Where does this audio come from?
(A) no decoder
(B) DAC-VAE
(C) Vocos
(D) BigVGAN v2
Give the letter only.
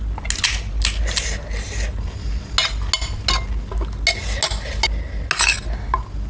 A